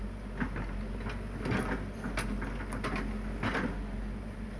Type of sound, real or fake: real